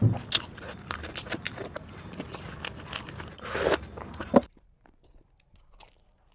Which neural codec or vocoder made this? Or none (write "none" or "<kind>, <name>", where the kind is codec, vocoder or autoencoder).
none